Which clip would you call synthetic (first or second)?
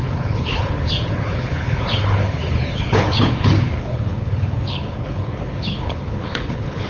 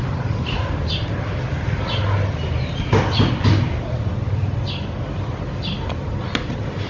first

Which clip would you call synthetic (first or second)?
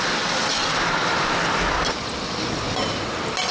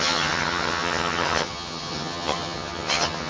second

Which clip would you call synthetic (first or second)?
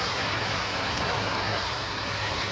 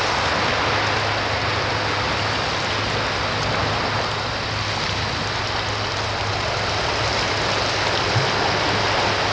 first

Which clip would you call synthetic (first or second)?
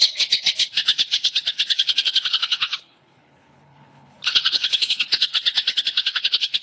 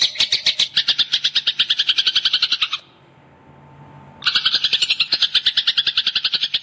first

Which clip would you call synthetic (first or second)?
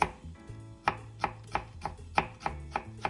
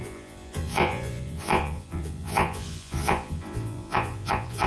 second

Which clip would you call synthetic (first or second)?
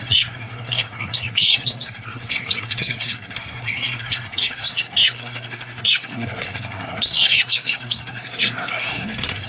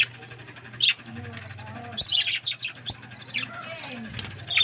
first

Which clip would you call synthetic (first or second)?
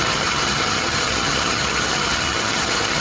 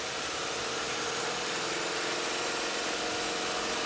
first